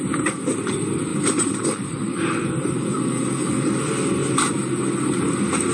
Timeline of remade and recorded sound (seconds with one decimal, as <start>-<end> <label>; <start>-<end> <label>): 0.0-1.1 recorded; 1.1-3.5 remade; 3.5-4.2 recorded; 4.2-4.7 remade; 4.7-5.7 recorded